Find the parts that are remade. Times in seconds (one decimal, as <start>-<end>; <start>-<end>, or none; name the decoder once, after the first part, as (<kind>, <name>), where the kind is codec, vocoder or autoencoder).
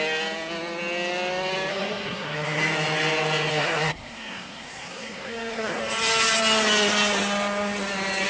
1.7-2.6 (codec, SNAC); 3.5-5.8